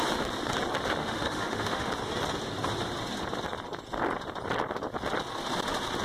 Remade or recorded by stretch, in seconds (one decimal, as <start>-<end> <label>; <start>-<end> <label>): 0.0-1.0 recorded; 1.0-1.9 remade; 1.9-6.0 recorded